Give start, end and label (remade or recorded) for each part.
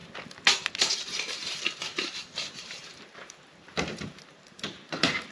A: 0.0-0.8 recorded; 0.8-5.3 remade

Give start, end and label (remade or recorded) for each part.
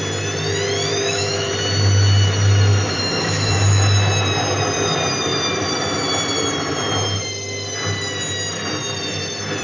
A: 0.0-0.9 recorded; 0.9-1.5 remade; 1.5-2.7 recorded; 2.7-3.8 remade; 3.8-9.6 recorded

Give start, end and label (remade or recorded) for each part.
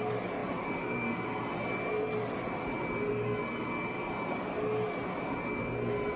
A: 0.0-6.2 recorded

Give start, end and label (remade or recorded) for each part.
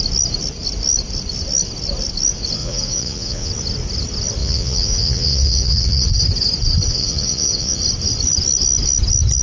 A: 0.0-2.6 recorded; 2.6-3.5 remade; 3.5-4.4 recorded; 4.4-6.1 remade; 6.1-6.9 recorded; 6.9-7.8 remade; 7.8-9.4 recorded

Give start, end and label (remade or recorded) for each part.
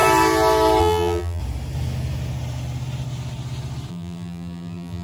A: 0.0-0.8 recorded; 0.8-1.4 remade; 1.4-3.9 recorded; 3.9-5.0 remade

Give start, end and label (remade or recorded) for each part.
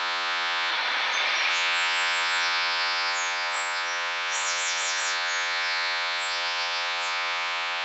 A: 0.0-0.7 remade; 0.7-1.5 recorded; 1.5-7.8 remade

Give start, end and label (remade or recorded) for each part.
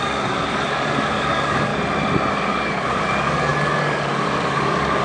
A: 0.0-1.7 remade; 1.7-2.3 recorded; 2.3-5.0 remade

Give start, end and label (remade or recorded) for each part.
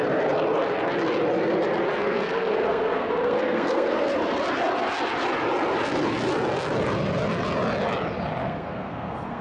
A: 0.0-2.0 recorded; 2.0-4.1 remade; 4.1-8.4 recorded; 8.4-9.4 remade